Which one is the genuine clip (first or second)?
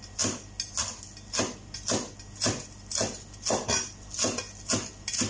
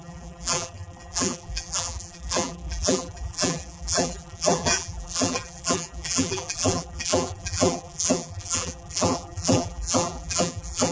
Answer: first